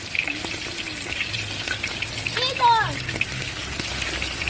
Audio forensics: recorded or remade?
recorded